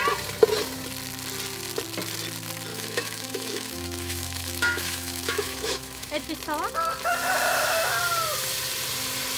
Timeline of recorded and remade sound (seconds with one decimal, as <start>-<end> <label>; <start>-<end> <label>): 0.0-2.7 recorded; 2.7-6.3 remade; 6.3-9.4 recorded